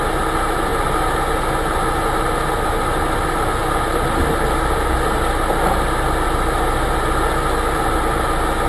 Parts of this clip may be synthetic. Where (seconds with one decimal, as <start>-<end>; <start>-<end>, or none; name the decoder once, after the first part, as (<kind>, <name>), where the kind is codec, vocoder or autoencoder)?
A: none